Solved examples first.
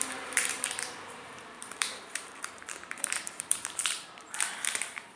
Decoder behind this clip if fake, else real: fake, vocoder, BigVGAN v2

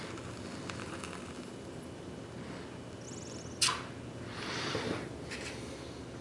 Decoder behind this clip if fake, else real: real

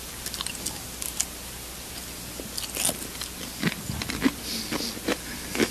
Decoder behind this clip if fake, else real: real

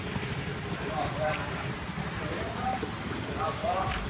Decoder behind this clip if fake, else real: fake, vocoder, BigVGAN v2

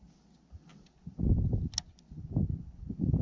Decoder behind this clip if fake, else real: real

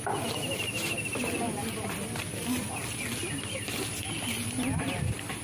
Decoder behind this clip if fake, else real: fake, vocoder, BigVGAN v2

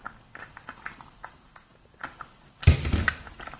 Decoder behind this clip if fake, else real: real